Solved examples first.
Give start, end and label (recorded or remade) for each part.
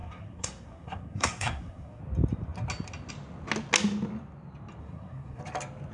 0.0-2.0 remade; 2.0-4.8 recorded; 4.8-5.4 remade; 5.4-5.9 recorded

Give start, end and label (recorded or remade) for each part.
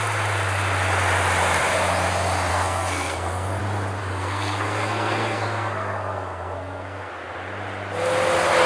0.0-2.5 recorded; 2.5-3.6 remade; 3.6-4.0 recorded; 4.0-7.1 remade; 7.1-8.7 recorded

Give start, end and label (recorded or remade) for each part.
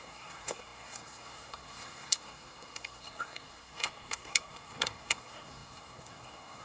0.0-6.6 remade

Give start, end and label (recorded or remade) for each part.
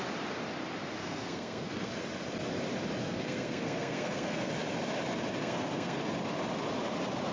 0.0-1.0 recorded; 1.0-1.9 remade; 1.9-3.0 recorded; 3.0-4.5 remade; 4.5-5.4 recorded; 5.4-6.0 remade; 6.0-7.3 recorded